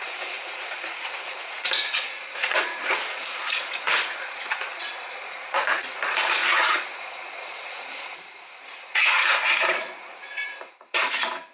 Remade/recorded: remade